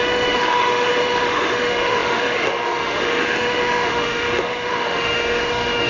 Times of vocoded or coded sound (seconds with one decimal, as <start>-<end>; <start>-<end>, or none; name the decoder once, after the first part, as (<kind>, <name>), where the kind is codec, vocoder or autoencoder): 0.0-5.9 (autoencoder, DAC-VAE)